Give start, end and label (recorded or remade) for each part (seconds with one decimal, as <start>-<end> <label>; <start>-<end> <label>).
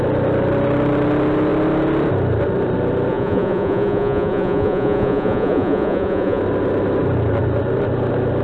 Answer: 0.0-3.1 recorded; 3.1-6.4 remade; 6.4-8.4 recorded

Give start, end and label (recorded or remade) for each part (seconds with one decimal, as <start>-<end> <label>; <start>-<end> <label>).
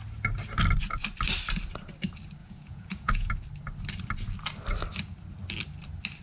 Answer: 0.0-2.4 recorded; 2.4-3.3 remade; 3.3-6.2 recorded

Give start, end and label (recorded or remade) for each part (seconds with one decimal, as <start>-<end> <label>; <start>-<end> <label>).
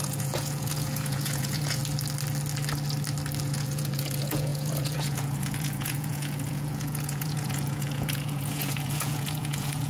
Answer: 0.0-1.8 remade; 1.8-3.4 recorded; 3.4-9.9 remade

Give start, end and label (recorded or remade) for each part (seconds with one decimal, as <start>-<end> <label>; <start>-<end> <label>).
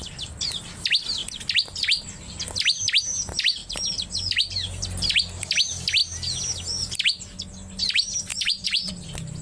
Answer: 0.0-8.3 recorded; 8.3-8.9 remade; 8.9-9.4 recorded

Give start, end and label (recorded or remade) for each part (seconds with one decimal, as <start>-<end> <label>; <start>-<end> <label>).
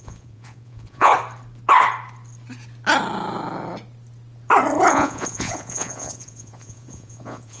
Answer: 0.0-1.1 remade; 1.1-4.9 recorded; 4.9-7.6 remade